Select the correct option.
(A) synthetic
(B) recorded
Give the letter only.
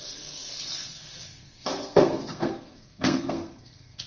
A